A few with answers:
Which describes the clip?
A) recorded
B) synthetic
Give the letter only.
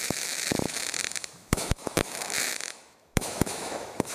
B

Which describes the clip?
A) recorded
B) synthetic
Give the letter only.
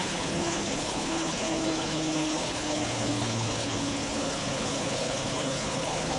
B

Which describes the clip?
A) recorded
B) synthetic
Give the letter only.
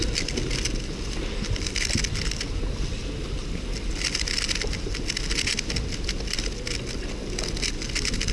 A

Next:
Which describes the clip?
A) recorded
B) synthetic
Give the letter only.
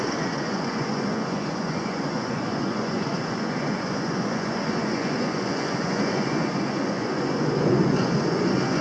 B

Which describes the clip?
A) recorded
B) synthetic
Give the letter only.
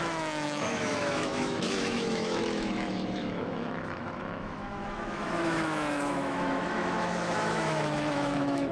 B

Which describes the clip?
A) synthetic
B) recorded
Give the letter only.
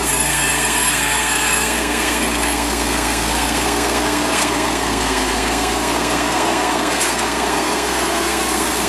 A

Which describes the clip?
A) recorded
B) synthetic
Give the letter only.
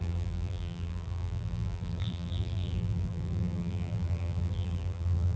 B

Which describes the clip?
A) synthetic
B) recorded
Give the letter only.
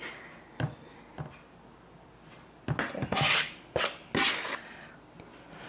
B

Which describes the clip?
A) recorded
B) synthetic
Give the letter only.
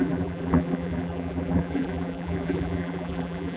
B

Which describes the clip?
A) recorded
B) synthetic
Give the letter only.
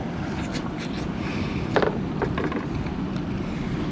A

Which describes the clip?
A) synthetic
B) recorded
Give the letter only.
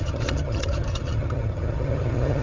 A